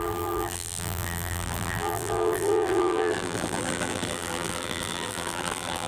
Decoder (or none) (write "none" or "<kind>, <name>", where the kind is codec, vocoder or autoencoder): vocoder, BigVGAN v2